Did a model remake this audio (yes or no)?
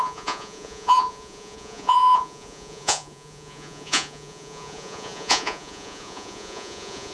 yes